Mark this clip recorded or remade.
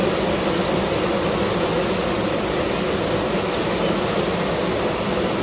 recorded